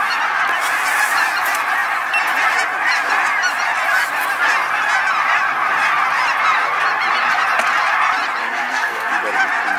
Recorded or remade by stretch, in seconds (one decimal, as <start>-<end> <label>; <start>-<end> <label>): 0.0-8.4 recorded; 8.4-9.1 remade; 9.1-9.8 recorded

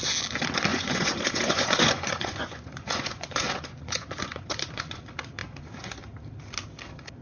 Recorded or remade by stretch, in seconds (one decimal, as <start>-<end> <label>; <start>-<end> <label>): 0.0-0.7 recorded; 0.7-5.0 remade; 5.0-5.4 recorded; 5.4-6.0 remade; 6.0-7.2 recorded

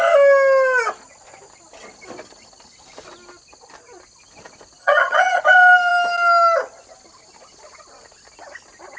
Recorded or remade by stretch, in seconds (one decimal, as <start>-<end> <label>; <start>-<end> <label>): 0.0-4.8 recorded; 4.8-5.4 remade; 5.4-9.0 recorded

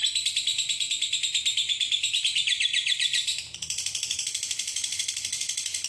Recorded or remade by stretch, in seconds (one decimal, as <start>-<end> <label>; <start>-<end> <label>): 0.0-0.5 recorded; 0.5-1.2 remade; 1.2-1.6 recorded; 1.6-5.0 remade; 5.0-5.9 recorded

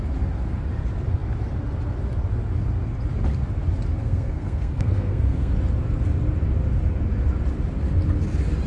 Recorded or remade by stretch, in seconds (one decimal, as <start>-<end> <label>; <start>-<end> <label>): 0.0-4.0 recorded; 4.0-5.5 remade; 5.5-8.7 recorded

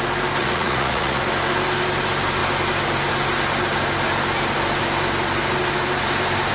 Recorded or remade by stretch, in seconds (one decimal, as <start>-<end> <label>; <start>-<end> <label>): 0.0-0.4 recorded; 0.4-1.2 remade; 1.2-6.5 recorded

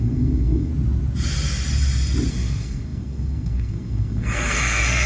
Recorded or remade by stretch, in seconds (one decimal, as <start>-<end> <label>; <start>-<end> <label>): 0.0-0.7 remade; 0.7-2.3 recorded; 2.3-5.1 remade